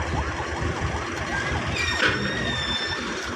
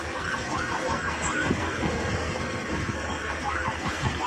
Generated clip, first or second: second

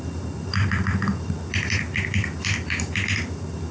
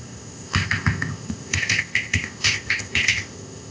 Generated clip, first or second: second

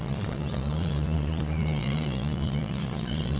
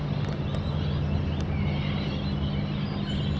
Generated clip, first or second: first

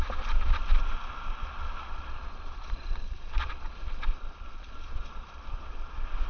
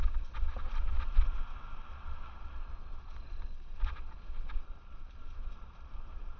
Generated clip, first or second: first